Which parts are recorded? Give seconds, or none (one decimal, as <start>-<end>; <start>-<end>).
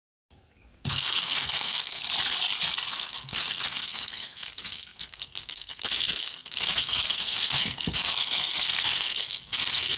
2.0-2.9